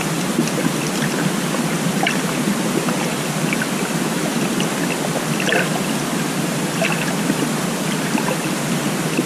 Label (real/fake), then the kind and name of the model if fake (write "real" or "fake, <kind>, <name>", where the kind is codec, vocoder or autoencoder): real